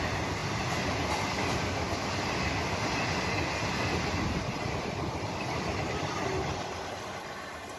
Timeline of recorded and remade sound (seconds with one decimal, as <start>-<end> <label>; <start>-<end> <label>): 0.0-7.8 recorded